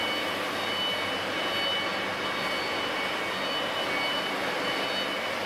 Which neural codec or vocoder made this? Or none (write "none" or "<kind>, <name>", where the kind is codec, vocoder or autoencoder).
none